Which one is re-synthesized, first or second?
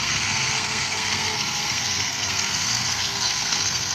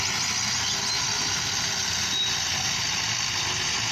first